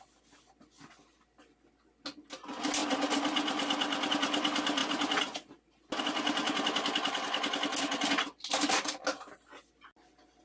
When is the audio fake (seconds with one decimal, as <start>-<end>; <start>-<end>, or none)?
none